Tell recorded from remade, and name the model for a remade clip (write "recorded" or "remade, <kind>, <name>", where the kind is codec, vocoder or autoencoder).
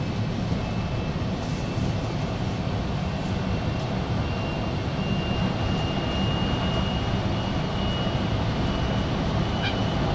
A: recorded